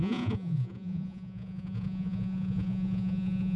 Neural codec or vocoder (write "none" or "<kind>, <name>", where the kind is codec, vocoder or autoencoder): vocoder, Vocos